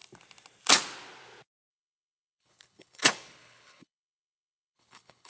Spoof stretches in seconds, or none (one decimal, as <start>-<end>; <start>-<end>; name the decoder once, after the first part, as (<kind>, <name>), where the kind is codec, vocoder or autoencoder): 1.7-5.3 (codec, HILCodec)